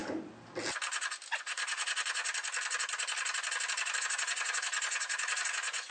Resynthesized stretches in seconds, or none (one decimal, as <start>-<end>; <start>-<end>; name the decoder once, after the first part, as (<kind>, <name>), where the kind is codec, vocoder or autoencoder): 1.3-2.2 (vocoder, Vocos); 4.0-5.9